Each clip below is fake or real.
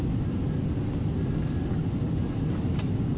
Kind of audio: real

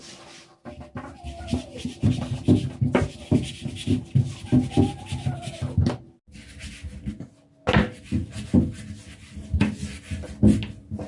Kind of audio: real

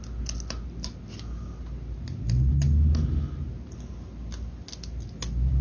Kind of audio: real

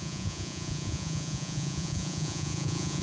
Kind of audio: fake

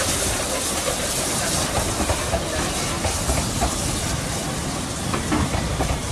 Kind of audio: real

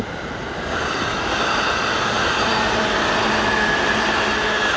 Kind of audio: real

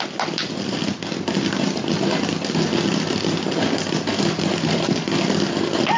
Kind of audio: real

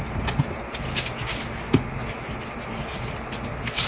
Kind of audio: real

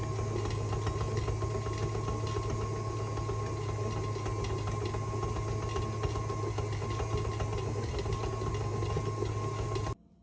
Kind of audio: real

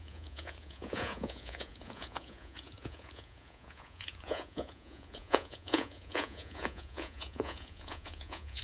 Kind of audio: fake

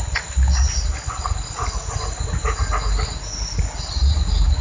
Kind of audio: real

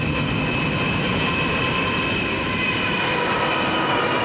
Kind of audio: real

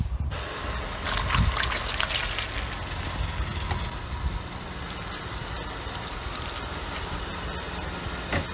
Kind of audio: real